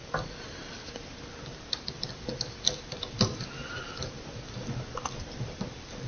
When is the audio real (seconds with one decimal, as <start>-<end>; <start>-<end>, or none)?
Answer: 0.0-6.1